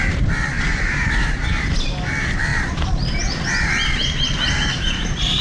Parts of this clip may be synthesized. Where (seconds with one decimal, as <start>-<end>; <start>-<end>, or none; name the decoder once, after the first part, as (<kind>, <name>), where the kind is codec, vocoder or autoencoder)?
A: 0.7-1.6 (vocoder, BigVGAN v2); 2.5-5.4